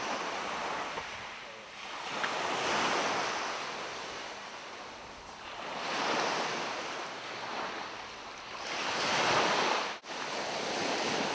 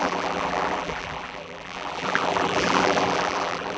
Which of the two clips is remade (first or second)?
second